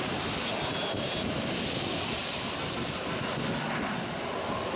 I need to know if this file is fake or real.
real